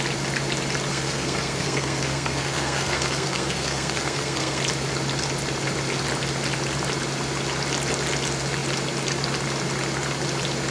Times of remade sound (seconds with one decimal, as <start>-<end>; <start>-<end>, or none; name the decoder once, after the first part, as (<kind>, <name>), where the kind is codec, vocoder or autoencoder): 0.9-4.6 (codec, SNAC)